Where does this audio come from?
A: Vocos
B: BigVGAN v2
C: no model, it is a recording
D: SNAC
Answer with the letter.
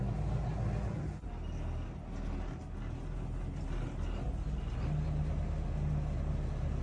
C